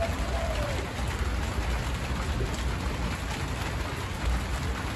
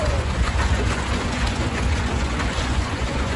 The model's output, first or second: second